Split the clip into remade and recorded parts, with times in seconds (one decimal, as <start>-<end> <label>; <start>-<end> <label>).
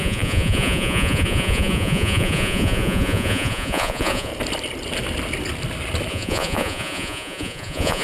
0.0-4.3 remade; 4.3-6.1 recorded; 6.1-8.0 remade